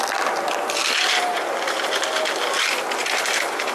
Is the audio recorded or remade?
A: recorded